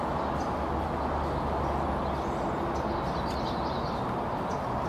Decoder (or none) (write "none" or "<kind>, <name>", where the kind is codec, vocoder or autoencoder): none